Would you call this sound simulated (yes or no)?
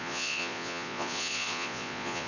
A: yes